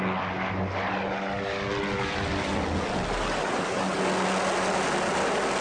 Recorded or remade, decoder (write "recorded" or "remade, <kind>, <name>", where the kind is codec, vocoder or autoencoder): recorded